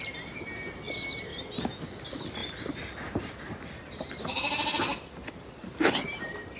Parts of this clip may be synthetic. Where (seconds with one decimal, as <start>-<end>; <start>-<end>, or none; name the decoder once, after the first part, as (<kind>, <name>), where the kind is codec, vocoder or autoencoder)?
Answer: none